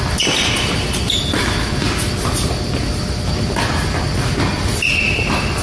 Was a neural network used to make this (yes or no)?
no